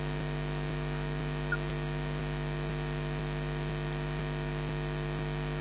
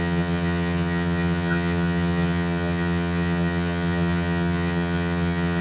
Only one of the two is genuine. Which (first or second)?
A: first